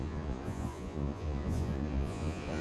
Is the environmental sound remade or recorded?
remade